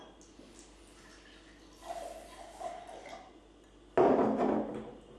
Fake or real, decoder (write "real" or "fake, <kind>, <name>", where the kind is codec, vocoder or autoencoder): real